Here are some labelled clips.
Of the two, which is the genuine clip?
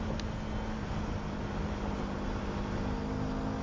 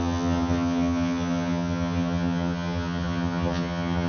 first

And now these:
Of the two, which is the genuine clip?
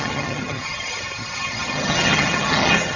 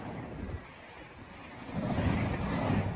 second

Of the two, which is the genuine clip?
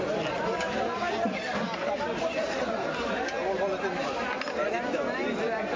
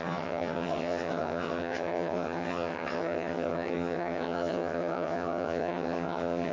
first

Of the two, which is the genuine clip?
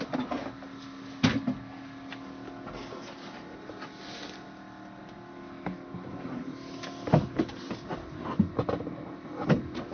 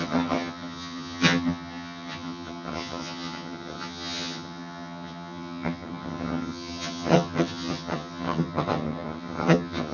first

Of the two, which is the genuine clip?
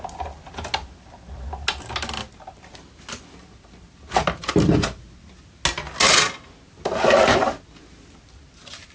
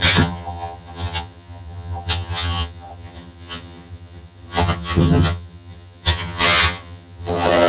first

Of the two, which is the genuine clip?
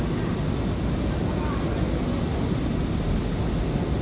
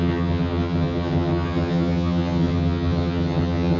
first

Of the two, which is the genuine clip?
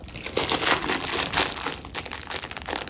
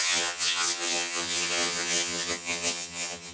first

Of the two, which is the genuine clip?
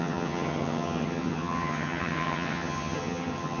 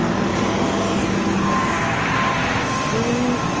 second